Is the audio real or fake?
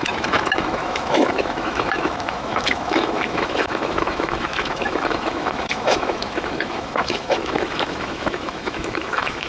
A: fake